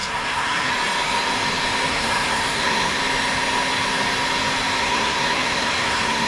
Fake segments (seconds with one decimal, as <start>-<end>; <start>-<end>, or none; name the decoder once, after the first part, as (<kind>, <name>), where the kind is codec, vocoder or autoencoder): 0.0-0.7 (codec, SNAC); 1.9-3.0; 4.8-6.3